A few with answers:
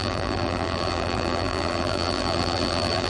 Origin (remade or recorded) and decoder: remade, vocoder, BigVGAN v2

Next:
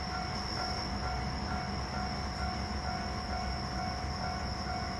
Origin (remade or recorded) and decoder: recorded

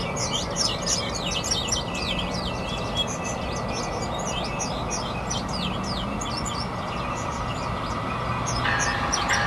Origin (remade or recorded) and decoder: recorded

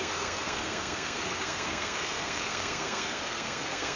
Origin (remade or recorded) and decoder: remade, codec, SNAC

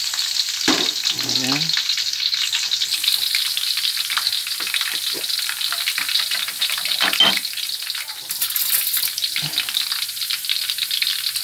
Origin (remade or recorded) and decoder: recorded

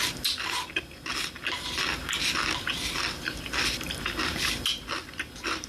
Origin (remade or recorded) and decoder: recorded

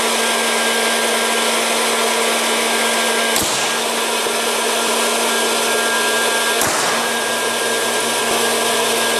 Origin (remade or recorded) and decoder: recorded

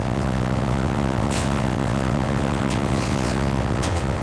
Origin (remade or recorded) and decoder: remade, vocoder, WaveNeXt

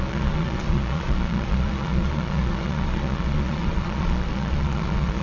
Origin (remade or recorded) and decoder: remade, vocoder, Vocos